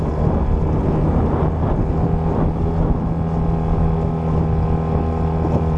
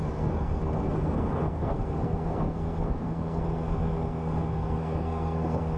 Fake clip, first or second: second